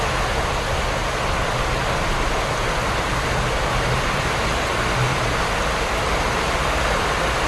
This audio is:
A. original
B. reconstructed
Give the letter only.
A